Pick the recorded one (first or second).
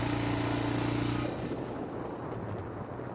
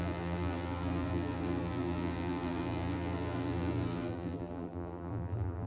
first